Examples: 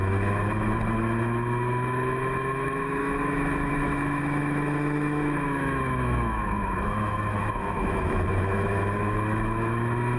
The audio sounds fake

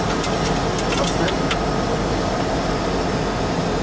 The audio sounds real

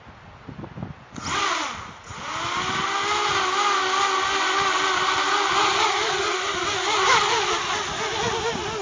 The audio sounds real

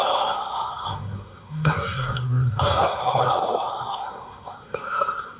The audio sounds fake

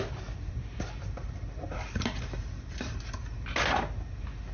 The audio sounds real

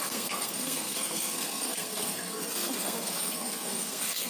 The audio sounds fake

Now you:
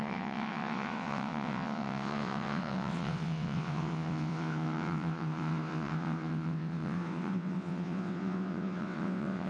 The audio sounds fake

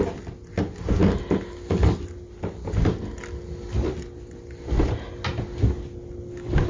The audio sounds real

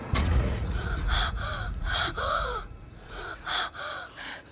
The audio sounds fake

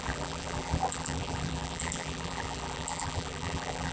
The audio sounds fake